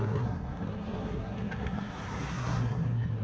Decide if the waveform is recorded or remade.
remade